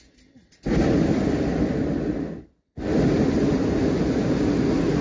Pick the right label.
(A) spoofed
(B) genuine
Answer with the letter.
B